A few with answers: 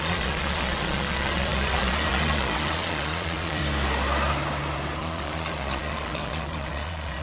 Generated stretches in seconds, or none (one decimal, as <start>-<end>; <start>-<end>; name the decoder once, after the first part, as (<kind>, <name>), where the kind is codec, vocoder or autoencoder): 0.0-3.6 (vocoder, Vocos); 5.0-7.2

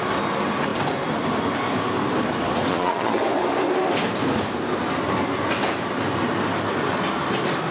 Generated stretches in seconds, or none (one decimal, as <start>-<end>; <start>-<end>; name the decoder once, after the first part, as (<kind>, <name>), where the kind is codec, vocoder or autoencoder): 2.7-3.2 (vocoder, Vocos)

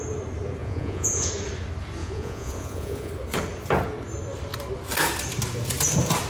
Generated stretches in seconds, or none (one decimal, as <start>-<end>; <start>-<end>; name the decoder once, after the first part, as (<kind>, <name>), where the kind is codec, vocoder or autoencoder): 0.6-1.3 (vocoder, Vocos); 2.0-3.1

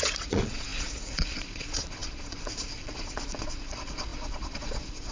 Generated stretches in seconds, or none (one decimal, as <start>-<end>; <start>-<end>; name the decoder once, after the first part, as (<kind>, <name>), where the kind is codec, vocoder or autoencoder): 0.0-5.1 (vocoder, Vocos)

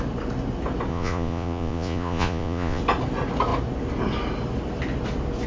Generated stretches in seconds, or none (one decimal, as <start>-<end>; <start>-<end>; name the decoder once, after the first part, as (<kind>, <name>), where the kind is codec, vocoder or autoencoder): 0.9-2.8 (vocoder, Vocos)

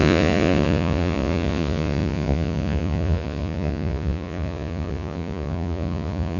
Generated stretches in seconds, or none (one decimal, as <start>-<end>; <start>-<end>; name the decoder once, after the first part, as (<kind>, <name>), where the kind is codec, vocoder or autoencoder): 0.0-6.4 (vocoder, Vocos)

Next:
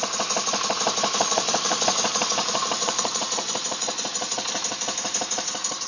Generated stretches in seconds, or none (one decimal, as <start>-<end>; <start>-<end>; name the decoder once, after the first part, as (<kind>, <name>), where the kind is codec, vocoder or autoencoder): 1.2-4.3 (vocoder, Vocos)